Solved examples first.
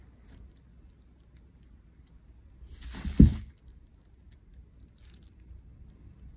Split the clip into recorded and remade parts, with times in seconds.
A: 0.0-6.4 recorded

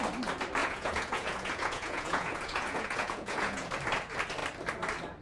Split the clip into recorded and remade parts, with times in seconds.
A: 0.0-0.6 recorded; 0.6-3.7 remade; 3.7-5.2 recorded

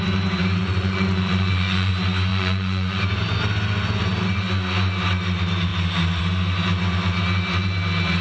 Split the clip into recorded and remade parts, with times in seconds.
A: 0.0-0.6 recorded; 0.6-1.9 remade; 1.9-2.3 recorded; 2.3-3.0 remade; 3.0-8.2 recorded

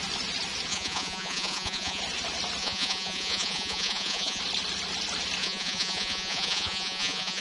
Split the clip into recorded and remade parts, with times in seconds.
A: 0.0-0.7 recorded; 0.7-2.0 remade; 2.0-2.6 recorded; 2.6-4.4 remade; 4.4-5.4 recorded; 5.4-7.4 remade